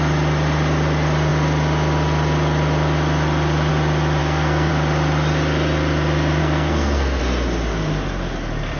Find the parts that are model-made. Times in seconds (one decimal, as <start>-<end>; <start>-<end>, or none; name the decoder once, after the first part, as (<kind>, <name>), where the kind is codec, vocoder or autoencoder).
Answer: 4.2-4.7 (codec, SNAC); 6.4-7.2